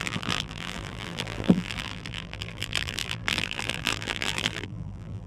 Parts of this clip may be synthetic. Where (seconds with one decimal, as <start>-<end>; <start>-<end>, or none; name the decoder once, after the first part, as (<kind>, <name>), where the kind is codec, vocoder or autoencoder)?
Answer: 0.0-5.3 (vocoder, BigVGAN v2)